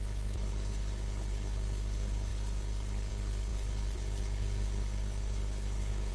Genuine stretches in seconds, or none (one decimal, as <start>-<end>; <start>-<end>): none